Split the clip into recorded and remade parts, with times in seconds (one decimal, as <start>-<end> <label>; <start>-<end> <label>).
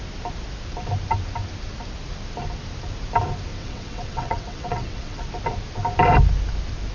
0.0-3.5 recorded; 3.5-5.2 remade; 5.2-6.9 recorded